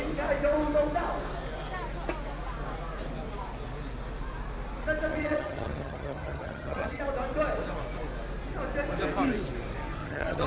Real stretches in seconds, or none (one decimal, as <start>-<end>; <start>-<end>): 0.0-5.1; 7.0-10.0